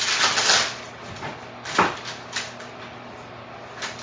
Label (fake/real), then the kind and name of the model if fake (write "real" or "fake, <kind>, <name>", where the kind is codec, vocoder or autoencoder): real